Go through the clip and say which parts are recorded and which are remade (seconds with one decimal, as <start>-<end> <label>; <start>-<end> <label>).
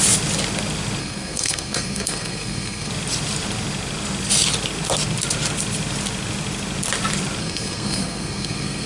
0.0-1.0 recorded; 1.0-2.9 remade; 2.9-7.4 recorded; 7.4-8.9 remade